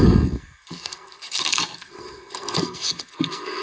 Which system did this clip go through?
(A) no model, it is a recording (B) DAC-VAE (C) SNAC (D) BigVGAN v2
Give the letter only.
C